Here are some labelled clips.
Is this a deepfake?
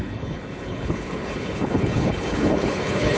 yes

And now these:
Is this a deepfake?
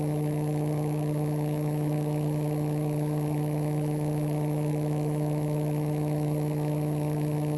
yes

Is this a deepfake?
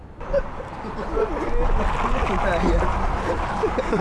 no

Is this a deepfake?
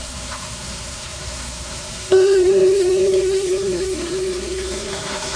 yes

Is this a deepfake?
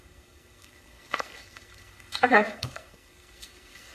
yes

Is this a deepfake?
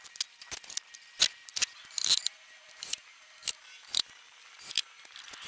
no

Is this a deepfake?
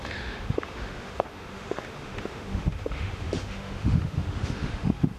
yes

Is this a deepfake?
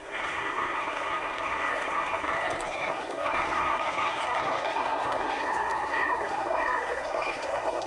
yes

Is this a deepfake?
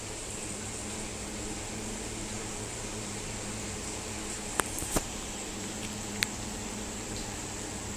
yes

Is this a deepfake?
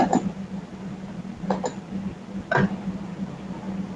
no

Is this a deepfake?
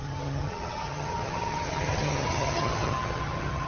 yes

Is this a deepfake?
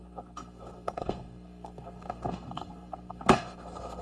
yes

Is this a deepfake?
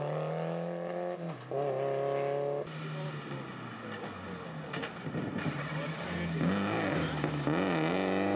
no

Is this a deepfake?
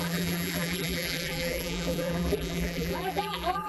yes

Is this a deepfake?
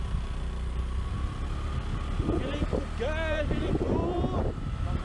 no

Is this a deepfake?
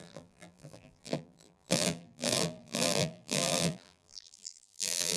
yes